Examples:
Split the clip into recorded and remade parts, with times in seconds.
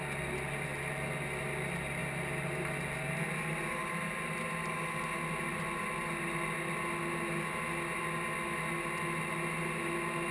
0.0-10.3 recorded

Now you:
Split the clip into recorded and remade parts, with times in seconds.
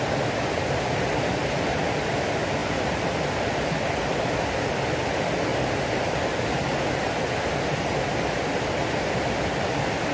0.0-10.1 recorded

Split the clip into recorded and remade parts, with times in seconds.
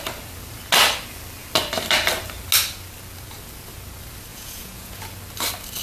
0.0-4.3 recorded; 4.3-5.0 remade; 5.0-5.8 recorded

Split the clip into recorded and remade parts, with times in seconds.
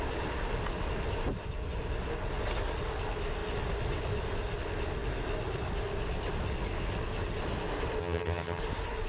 0.0-8.0 recorded; 8.0-8.6 remade; 8.6-9.1 recorded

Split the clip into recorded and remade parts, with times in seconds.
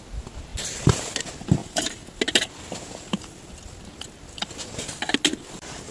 0.0-1.6 recorded; 1.6-2.2 remade; 2.2-5.9 recorded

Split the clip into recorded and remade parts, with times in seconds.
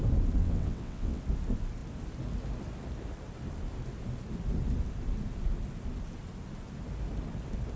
0.0-0.4 recorded; 0.4-1.2 remade; 1.2-7.8 recorded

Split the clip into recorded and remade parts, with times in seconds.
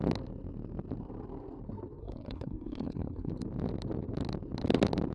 0.0-2.0 recorded; 2.0-3.3 remade; 3.3-5.1 recorded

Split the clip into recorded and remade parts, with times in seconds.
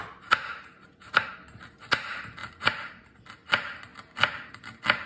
0.0-0.6 recorded; 0.6-1.3 remade; 1.3-2.4 recorded; 2.4-2.9 remade; 2.9-5.1 recorded